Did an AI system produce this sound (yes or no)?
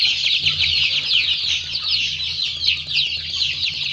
no